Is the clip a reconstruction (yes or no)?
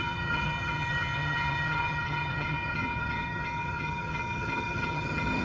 yes